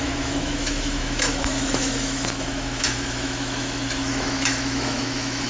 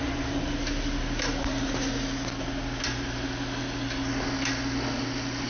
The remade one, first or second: first